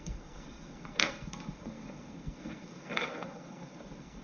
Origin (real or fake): fake